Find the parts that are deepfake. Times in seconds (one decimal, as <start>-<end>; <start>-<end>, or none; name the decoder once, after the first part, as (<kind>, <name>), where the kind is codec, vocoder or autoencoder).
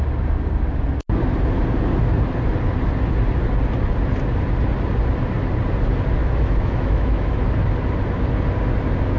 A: 6.2-7.3 (autoencoder, DAC-VAE)